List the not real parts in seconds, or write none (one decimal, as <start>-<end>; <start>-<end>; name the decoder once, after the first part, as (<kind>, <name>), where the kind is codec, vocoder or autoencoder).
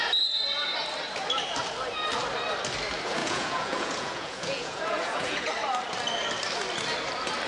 3.2-5.5 (vocoder, Vocos)